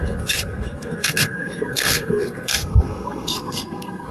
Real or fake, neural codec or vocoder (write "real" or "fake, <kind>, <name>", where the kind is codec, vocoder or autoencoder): fake, codec, SNAC